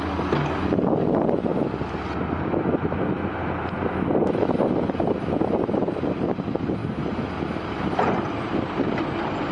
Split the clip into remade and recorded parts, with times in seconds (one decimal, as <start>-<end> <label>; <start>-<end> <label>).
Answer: 0.0-9.5 recorded